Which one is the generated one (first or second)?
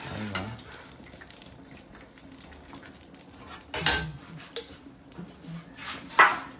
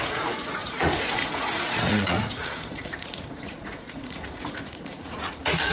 second